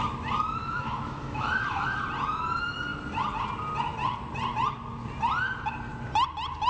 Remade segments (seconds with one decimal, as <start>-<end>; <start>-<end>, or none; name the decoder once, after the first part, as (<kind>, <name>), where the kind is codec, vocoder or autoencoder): 0.6-2.0 (autoencoder, DAC-VAE)